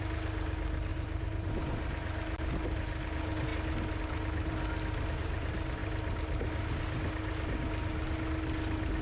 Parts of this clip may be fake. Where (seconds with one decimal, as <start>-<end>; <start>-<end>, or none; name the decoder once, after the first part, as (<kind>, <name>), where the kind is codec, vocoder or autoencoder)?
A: 0.9-1.5 (vocoder, BigVGAN v2)